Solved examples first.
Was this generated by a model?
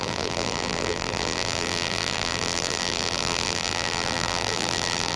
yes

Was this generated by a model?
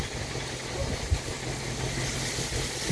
no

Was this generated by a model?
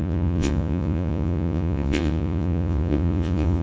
yes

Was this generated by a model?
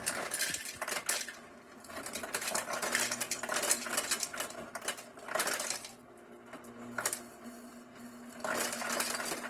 no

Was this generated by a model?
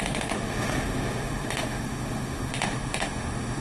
yes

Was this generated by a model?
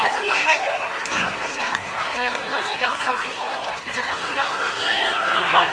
yes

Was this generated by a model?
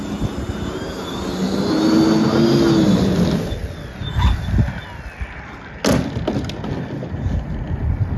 no